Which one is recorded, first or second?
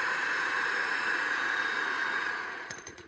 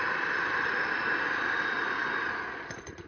second